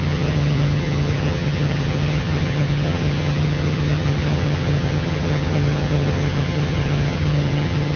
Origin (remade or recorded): remade